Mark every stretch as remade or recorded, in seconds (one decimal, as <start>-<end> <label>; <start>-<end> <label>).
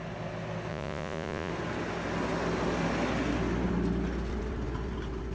0.0-0.7 recorded; 0.7-1.5 remade; 1.5-5.3 recorded